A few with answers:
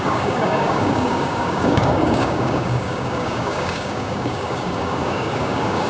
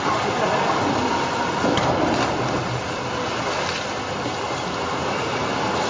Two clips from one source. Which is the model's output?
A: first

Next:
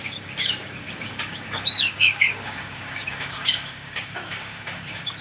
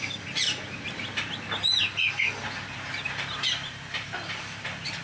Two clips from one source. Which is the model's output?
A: first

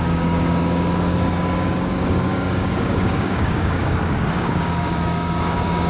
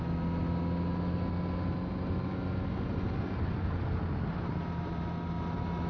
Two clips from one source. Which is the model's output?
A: first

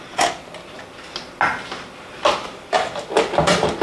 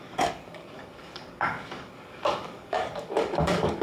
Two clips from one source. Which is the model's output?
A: second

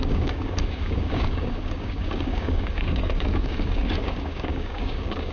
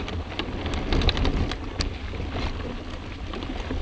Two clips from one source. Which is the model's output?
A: first